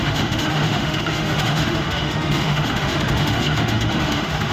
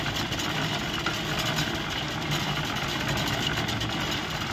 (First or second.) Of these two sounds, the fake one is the first